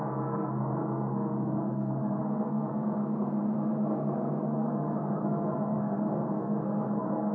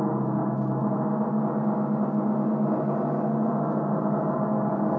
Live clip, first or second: second